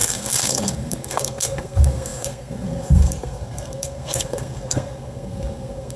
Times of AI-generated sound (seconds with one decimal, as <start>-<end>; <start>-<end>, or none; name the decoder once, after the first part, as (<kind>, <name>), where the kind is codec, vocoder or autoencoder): 0.0-6.0 (codec, SNAC)